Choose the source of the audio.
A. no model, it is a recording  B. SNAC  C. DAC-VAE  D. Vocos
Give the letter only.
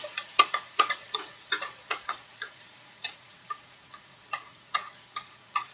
D